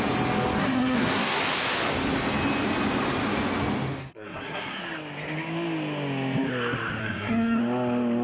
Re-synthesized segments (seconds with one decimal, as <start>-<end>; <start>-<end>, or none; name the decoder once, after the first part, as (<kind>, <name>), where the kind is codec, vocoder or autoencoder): 0.6-1.4 (codec, SNAC); 4.0-4.8; 7.0-7.6